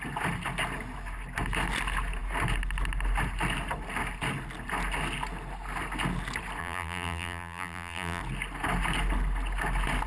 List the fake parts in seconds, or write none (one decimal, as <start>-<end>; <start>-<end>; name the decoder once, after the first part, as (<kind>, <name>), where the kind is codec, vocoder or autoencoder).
6.6-8.2 (vocoder, BigVGAN v2)